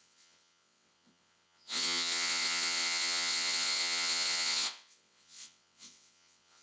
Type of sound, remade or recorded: remade